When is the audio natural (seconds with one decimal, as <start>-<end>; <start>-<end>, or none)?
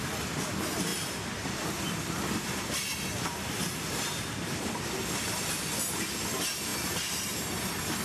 0.0-0.9; 5.7-6.7; 7.4-8.0